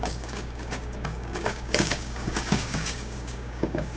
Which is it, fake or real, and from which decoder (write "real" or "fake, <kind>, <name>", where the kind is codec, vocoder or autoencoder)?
fake, codec, DAC